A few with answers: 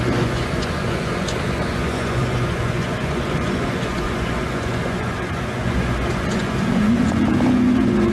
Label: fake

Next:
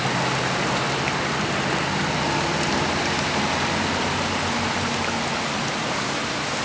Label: real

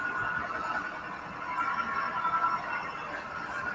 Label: real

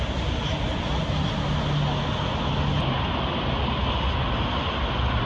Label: real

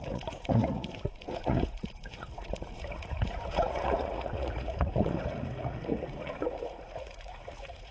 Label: fake